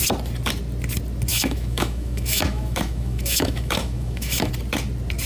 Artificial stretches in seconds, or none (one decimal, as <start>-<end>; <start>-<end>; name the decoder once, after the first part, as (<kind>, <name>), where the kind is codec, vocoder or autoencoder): 1.3-4.5 (autoencoder, DAC-VAE)